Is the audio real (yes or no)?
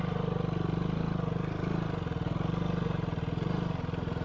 yes